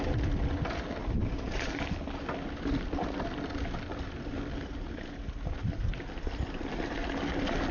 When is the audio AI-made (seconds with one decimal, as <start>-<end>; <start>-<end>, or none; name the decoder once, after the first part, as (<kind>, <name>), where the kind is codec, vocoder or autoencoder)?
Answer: 1.0-1.8 (vocoder, BigVGAN v2); 4.7-6.0

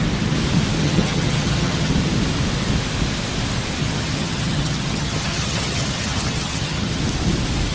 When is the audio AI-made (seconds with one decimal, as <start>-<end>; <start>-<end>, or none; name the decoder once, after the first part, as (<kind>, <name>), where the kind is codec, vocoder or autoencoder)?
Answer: 0.8-1.9 (vocoder, HiFi-GAN); 3.8-7.0